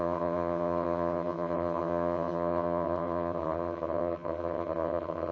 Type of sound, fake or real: fake